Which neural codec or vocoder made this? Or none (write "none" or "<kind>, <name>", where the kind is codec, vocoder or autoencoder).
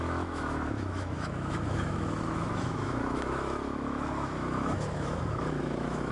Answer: autoencoder, DAC-VAE